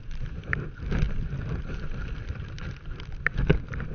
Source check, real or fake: real